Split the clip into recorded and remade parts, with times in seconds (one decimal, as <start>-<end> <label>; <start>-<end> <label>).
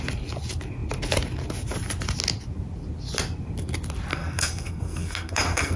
0.0-4.1 recorded; 4.1-5.8 remade